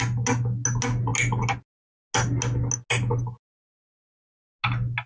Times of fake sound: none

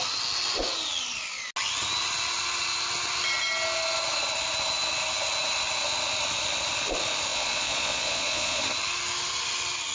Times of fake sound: 7.3-8.6 (vocoder, Vocos)

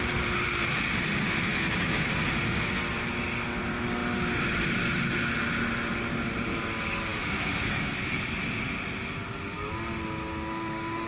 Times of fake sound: 1.5-2.1 (autoencoder, DAC-VAE); 7.1-8.2